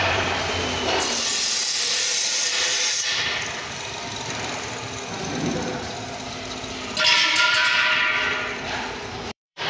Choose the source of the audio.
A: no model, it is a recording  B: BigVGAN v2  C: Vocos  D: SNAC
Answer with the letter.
B